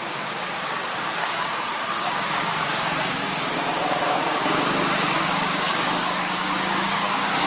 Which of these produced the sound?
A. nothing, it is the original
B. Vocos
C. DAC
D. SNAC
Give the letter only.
C